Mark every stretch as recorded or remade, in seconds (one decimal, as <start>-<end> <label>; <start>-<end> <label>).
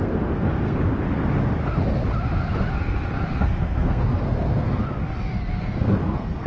0.0-0.8 remade; 0.8-3.4 recorded; 3.4-4.8 remade; 4.8-5.6 recorded; 5.6-6.5 remade